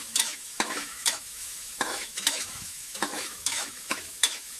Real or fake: fake